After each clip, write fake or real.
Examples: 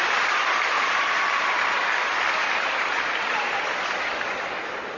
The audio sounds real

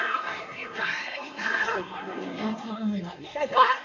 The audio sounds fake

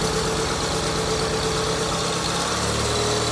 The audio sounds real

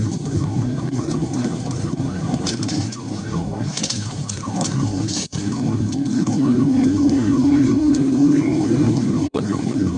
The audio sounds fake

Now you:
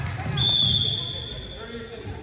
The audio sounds real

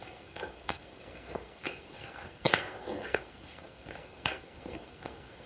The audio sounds fake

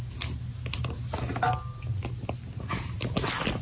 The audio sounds real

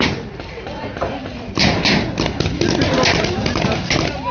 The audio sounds real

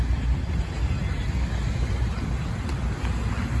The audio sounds real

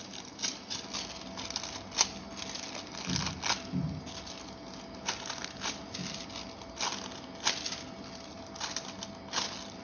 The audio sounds real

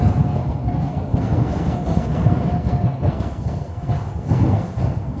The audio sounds fake